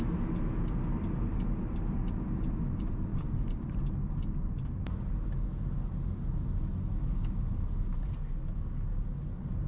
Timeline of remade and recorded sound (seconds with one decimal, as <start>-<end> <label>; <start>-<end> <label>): 0.0-9.7 recorded

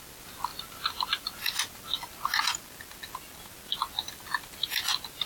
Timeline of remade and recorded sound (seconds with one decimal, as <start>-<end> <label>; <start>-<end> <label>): 0.0-5.3 recorded

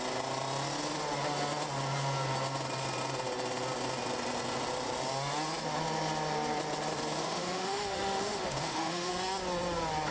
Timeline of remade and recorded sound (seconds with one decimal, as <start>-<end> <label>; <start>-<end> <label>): 0.0-7.2 recorded; 7.2-9.1 remade; 9.1-10.1 recorded

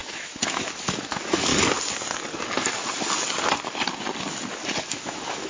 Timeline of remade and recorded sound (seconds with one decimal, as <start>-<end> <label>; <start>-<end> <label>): 0.0-1.5 remade; 1.5-4.8 recorded; 4.8-5.5 remade

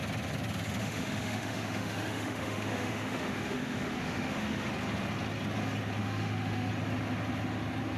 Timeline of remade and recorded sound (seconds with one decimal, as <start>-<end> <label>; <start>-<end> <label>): 0.0-0.8 recorded; 0.8-4.7 remade; 4.7-6.0 recorded; 6.0-6.7 remade; 6.7-8.0 recorded

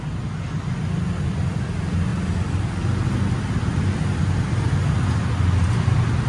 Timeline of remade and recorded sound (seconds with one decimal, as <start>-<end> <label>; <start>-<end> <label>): 0.0-6.3 recorded

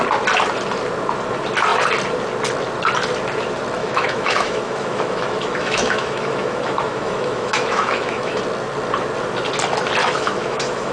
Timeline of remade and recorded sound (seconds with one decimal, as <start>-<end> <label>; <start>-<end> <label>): 0.0-3.8 recorded; 3.8-8.4 remade; 8.4-10.0 recorded; 10.0-10.9 remade